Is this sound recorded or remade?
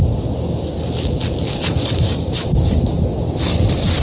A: recorded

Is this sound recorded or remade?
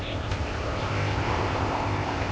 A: remade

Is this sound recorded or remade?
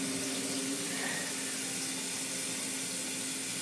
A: recorded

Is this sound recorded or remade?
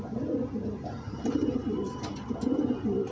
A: recorded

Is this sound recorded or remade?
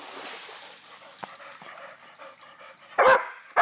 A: recorded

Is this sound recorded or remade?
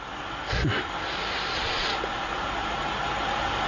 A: recorded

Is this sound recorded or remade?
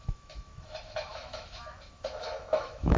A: remade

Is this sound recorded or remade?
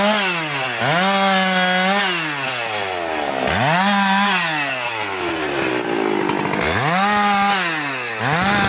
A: recorded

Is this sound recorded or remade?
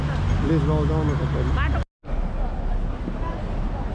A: recorded